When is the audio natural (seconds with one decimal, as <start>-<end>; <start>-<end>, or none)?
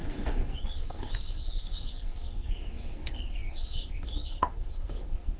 none